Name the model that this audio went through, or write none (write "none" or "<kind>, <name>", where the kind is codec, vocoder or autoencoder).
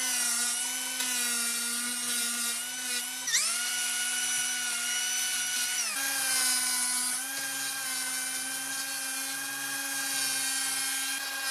none